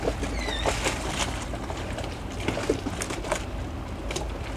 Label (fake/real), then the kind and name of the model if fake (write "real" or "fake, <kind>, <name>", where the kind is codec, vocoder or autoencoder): real